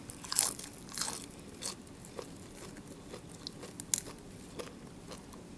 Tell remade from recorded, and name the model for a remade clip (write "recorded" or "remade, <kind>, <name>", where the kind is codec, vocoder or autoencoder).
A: recorded